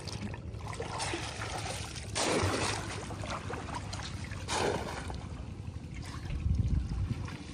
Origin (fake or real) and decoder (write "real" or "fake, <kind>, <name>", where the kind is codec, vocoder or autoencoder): real